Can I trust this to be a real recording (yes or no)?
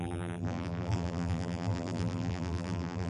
no